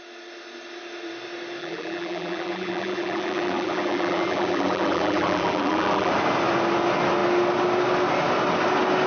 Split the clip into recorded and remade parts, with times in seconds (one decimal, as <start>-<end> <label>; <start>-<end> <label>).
0.0-1.6 recorded; 1.6-6.1 remade; 6.1-9.1 recorded